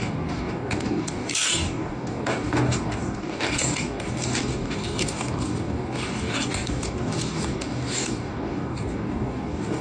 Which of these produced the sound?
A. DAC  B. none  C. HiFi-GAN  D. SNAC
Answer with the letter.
A